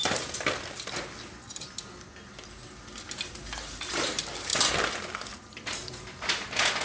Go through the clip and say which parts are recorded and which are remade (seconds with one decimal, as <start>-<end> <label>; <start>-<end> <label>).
0.0-6.8 recorded